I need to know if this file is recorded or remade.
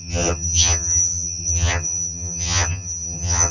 remade